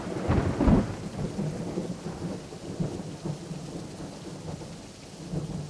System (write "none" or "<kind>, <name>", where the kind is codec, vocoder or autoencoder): none